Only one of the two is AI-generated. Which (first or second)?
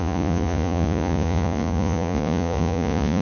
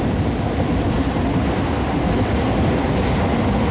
first